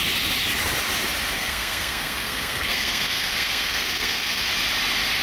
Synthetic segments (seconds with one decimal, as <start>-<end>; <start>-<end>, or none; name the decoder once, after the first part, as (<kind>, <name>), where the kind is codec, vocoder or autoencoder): 1.4-4.5 (codec, SNAC)

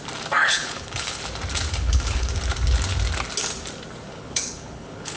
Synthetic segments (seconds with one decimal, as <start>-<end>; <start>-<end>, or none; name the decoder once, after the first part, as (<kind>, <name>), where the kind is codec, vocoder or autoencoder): 0.4-1.2 (codec, HILCodec); 1.7-2.3; 4.1-5.2

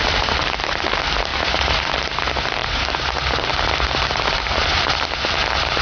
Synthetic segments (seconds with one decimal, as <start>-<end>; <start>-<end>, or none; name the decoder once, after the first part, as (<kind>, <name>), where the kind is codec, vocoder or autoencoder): 1.3-1.8 (vocoder, BigVGAN v2); 2.6-3.5

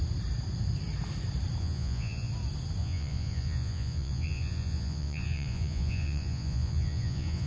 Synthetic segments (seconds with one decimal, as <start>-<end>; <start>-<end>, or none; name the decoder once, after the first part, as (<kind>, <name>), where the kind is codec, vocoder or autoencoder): 1.6-2.3 (vocoder, Vocos); 2.8-7.5

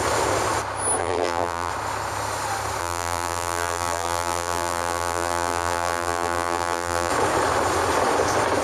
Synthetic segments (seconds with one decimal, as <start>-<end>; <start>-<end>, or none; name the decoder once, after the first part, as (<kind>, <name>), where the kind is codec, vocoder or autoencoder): 1.0-1.7 (vocoder, BigVGAN v2); 2.8-7.1

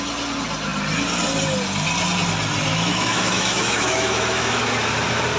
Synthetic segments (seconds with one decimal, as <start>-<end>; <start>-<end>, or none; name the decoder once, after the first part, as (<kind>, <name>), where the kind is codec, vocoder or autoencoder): 2.7-4.6 (autoencoder, DAC-VAE)

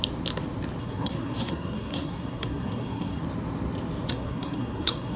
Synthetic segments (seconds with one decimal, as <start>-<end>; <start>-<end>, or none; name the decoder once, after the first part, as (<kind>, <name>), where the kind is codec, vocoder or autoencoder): 0.8-3.2 (codec, SNAC); 4.1-5.2